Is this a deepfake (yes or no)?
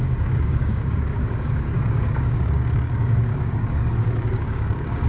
yes